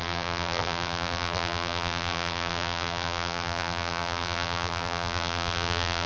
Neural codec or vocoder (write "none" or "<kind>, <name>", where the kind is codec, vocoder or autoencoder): vocoder, BigVGAN v2